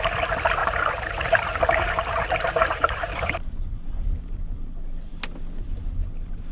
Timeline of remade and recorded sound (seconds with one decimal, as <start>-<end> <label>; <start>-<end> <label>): 0.0-0.6 recorded; 0.6-4.2 remade; 4.2-6.5 recorded